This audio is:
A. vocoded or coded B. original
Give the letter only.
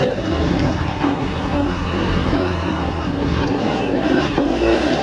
A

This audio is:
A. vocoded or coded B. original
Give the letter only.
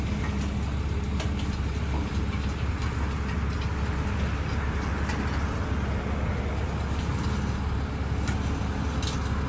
B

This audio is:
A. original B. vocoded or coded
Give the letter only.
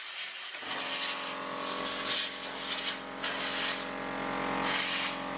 A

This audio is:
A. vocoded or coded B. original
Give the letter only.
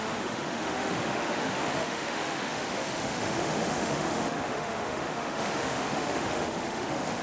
A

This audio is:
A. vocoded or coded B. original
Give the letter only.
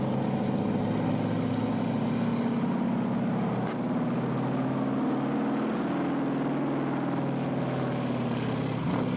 B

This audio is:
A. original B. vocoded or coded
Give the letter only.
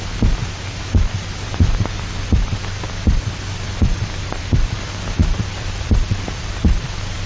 B